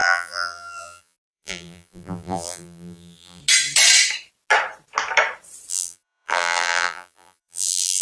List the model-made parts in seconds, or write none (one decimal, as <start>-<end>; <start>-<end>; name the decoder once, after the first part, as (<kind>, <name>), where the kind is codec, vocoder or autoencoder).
0.0-3.4 (vocoder, BigVGAN v2); 5.7-8.0